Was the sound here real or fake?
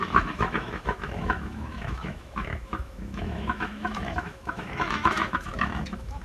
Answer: fake